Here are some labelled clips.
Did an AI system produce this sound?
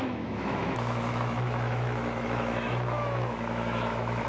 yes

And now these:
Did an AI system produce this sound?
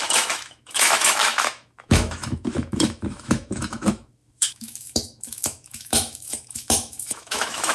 yes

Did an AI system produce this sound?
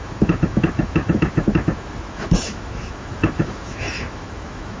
yes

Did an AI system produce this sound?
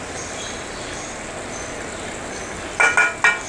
no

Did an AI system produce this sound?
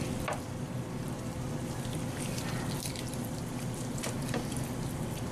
no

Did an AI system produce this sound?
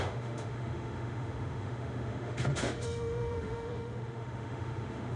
yes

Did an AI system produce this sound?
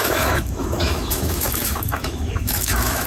yes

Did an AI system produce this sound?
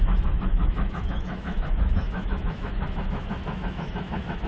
yes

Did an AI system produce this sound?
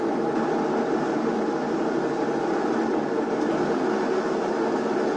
no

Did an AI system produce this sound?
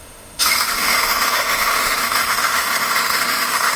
yes